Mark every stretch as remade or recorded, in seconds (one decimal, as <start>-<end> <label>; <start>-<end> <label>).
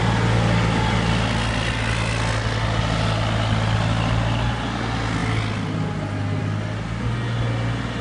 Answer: 0.0-8.0 recorded